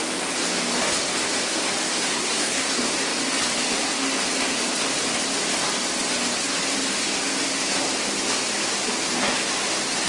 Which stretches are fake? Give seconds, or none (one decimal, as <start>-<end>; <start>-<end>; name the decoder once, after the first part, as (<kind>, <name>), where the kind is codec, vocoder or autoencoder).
2.1-2.7 (codec, SNAC)